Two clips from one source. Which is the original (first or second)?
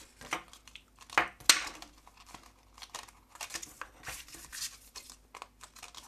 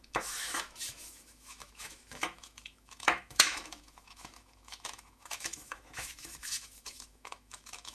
first